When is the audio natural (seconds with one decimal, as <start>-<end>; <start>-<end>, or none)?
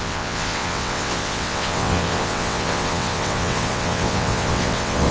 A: none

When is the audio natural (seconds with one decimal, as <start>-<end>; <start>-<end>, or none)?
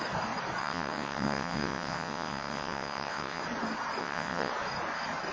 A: 0.0-0.6; 3.4-4.0; 4.5-5.3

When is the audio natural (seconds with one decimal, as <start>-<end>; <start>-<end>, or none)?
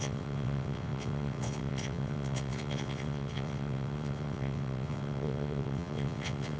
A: none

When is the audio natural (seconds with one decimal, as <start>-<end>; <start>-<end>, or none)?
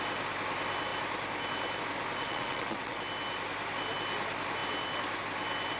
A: 0.0-2.2; 3.0-5.8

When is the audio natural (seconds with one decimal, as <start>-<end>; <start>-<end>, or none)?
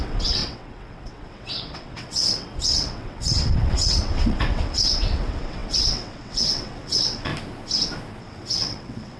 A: 7.3-8.2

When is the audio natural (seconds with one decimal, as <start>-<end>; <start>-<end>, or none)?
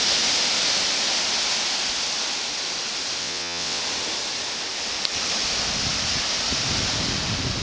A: 0.0-3.2; 3.8-7.6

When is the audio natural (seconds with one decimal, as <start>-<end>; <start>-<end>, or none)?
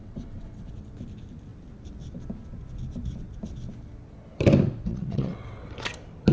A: 0.7-4.9; 5.6-6.3